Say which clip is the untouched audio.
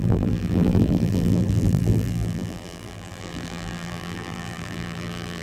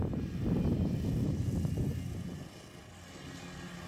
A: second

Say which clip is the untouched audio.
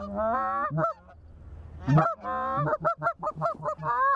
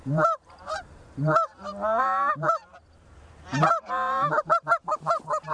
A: first